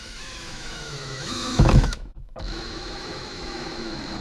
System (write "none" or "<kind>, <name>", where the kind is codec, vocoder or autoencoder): autoencoder, DAC-VAE